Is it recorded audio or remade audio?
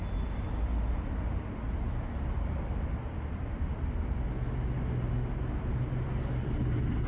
recorded